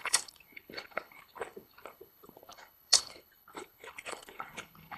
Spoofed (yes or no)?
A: yes